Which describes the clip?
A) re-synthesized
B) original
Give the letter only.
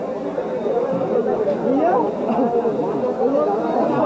B